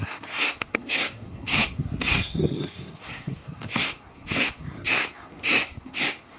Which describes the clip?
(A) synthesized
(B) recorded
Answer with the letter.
A